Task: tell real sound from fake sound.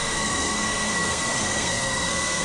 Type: fake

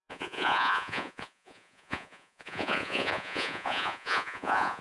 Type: fake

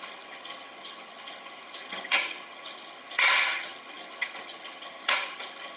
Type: fake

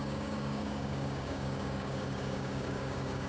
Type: fake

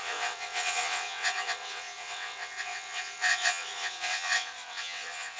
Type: fake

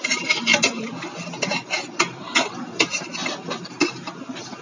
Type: real